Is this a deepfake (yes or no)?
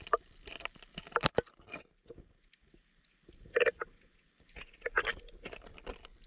no